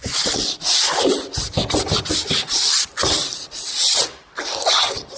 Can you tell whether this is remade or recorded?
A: recorded